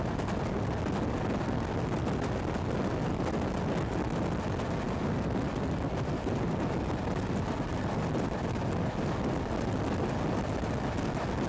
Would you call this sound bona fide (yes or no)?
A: yes